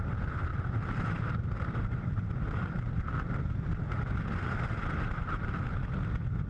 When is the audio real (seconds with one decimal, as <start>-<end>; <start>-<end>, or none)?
0.0-0.5; 1.4-1.8; 3.1-4.8; 5.7-6.5